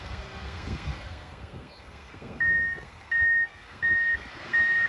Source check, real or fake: fake